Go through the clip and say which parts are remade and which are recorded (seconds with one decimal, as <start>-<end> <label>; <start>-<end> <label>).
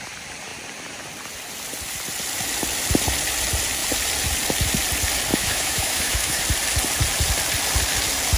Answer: 0.0-5.3 recorded; 5.3-6.4 remade; 6.4-8.4 recorded